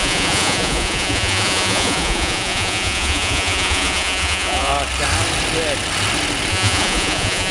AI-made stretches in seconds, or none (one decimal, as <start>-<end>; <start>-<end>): 0.0-4.7; 6.5-7.5